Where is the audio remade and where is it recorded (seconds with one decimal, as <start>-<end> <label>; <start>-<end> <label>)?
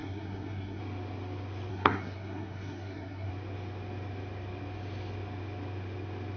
0.0-0.8 remade; 0.8-1.7 recorded; 1.7-3.3 remade; 3.3-6.4 recorded